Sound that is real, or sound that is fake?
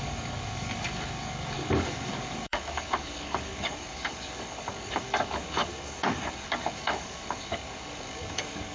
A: fake